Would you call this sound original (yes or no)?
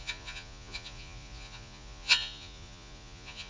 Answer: no